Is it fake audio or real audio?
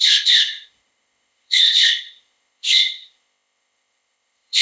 fake